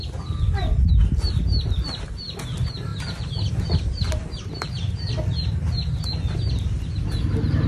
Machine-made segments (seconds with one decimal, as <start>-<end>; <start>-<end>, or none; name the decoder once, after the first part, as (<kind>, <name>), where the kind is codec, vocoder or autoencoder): none